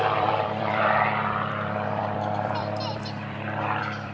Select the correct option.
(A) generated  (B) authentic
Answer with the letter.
A